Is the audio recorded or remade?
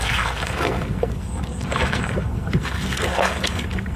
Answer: remade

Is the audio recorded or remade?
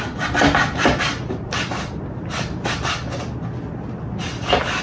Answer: recorded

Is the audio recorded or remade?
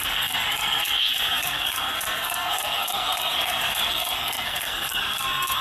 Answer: remade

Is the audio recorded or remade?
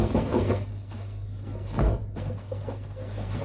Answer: remade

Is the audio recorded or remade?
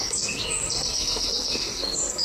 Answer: remade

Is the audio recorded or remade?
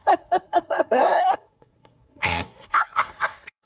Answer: remade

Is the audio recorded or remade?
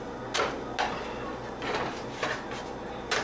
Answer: recorded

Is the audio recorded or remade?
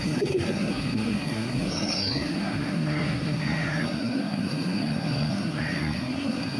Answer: remade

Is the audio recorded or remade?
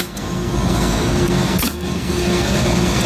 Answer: remade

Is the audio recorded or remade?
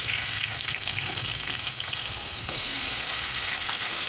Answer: remade